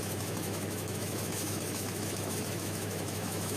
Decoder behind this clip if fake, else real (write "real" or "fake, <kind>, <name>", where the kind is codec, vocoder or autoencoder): fake, autoencoder, DAC-VAE